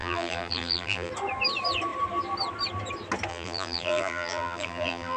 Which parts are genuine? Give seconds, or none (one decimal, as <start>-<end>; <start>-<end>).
1.1-3.3